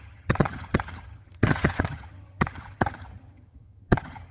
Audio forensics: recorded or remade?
remade